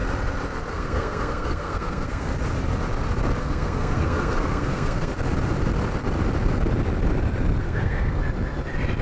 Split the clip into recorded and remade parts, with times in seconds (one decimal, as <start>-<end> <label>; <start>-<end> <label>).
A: 0.0-0.7 recorded; 0.7-2.3 remade; 2.3-3.4 recorded; 3.4-5.1 remade; 5.1-7.6 recorded; 7.6-8.2 remade; 8.2-9.0 recorded